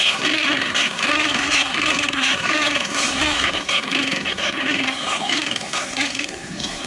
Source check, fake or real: fake